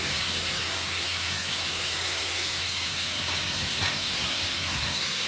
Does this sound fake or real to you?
fake